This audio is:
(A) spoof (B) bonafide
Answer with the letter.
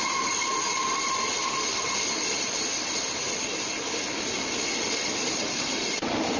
B